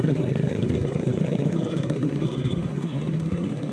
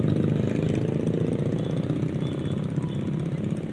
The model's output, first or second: first